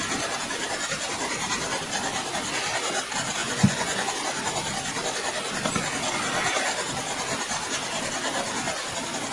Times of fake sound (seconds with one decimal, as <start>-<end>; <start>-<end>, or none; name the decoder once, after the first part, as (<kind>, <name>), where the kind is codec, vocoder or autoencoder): 3.4-4.1 (vocoder, Vocos)